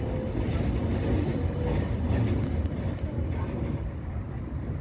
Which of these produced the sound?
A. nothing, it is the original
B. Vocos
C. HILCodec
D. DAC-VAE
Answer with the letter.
A